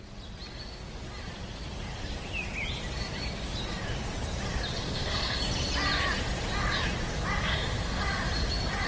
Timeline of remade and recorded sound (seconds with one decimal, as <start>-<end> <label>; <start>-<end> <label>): 0.0-4.8 recorded; 4.8-5.4 remade; 5.4-7.4 recorded; 7.4-8.0 remade; 8.0-8.9 recorded